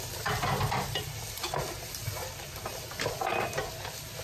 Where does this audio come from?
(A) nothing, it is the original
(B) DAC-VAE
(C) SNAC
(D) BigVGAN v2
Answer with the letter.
A